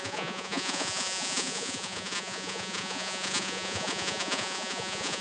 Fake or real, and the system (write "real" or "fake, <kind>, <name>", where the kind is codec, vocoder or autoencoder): fake, vocoder, Vocos